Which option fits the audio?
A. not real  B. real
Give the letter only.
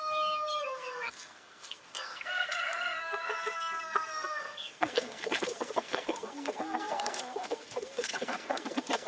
A